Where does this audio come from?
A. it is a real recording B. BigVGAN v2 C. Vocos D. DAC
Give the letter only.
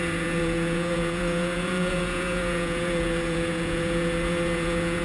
C